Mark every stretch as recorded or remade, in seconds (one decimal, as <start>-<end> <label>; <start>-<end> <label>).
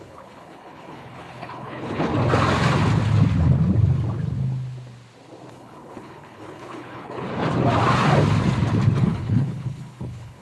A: 0.0-2.1 remade; 2.1-5.5 recorded; 5.5-7.3 remade; 7.3-9.0 recorded; 9.0-10.4 remade